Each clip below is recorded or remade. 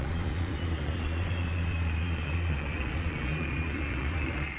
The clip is remade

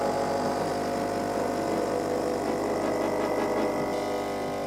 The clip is recorded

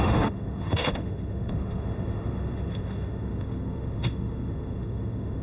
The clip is remade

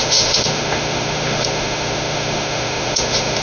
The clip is remade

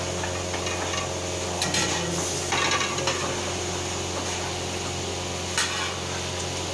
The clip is recorded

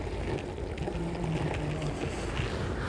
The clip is recorded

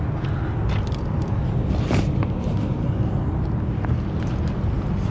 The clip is recorded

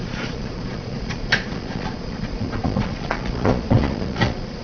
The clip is remade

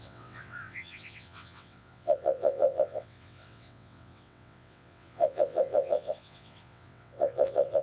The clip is remade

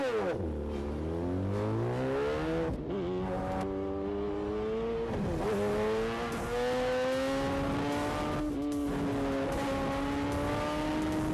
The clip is recorded